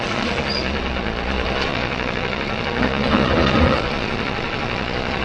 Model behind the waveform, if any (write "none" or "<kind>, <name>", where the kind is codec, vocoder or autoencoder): vocoder, Vocos